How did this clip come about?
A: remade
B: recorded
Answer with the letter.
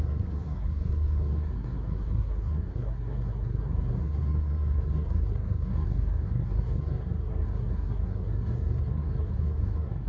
A